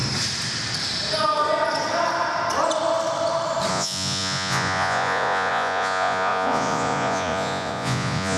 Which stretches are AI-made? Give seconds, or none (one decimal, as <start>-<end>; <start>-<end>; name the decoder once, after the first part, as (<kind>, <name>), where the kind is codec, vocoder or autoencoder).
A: 3.7-8.4 (vocoder, Vocos)

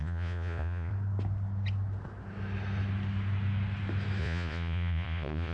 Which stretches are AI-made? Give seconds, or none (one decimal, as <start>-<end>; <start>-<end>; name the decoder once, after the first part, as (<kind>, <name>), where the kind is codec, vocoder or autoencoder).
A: 0.0-0.9 (vocoder, Vocos); 4.2-5.5